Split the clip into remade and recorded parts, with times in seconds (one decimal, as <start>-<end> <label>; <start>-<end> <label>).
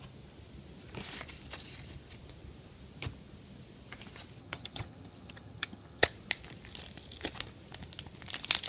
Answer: 0.0-4.4 recorded; 4.4-6.1 remade; 6.1-8.7 recorded